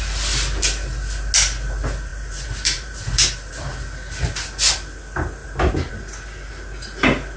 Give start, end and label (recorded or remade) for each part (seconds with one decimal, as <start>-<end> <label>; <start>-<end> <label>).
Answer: 0.0-2.1 recorded; 2.1-3.5 remade; 3.5-7.4 recorded